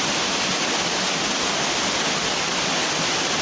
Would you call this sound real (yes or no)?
yes